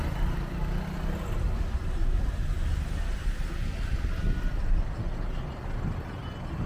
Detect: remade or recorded recorded